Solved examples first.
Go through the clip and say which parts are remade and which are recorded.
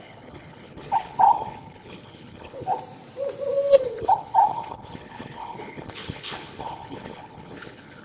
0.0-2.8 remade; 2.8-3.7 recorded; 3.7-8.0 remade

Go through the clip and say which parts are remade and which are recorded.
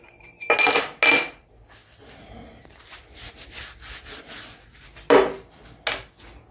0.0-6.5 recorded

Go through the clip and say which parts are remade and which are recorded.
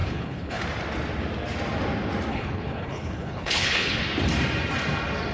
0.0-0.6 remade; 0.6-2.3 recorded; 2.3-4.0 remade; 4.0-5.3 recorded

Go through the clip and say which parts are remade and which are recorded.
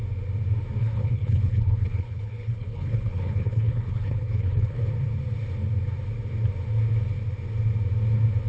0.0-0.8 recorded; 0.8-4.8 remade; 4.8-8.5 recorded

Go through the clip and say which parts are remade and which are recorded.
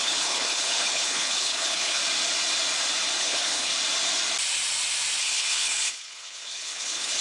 0.0-2.0 remade; 2.0-3.2 recorded; 3.2-3.7 remade; 3.7-5.2 recorded; 5.2-7.2 remade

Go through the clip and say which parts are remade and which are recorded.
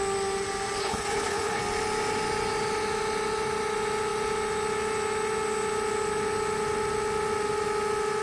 0.0-0.8 recorded; 0.8-1.6 remade; 1.6-8.2 recorded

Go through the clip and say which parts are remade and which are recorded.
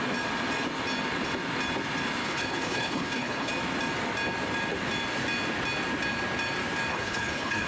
0.0-2.2 recorded; 2.2-3.5 remade; 3.5-6.9 recorded; 6.9-7.7 remade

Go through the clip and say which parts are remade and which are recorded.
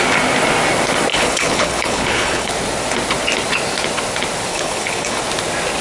0.0-1.1 recorded; 1.1-2.5 remade; 2.5-4.5 recorded; 4.5-5.2 remade; 5.2-5.8 recorded